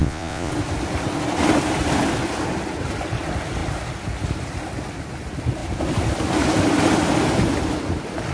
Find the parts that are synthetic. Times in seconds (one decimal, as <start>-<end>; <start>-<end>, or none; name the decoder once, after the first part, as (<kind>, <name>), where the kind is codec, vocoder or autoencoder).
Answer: 0.0-0.5 (vocoder, Vocos)